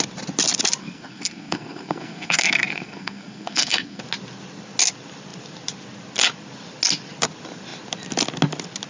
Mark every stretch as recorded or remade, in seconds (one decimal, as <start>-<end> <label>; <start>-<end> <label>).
0.0-0.8 recorded; 0.8-4.0 remade; 4.0-8.9 recorded